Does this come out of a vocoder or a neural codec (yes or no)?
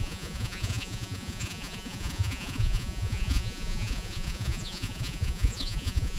yes